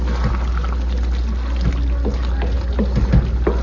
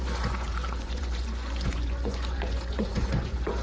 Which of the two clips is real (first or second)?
first